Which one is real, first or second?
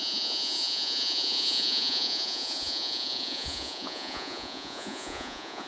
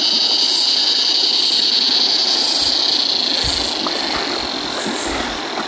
second